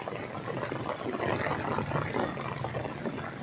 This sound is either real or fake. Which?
real